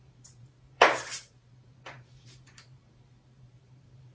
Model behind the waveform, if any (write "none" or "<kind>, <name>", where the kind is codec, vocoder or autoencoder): vocoder, BigVGAN v2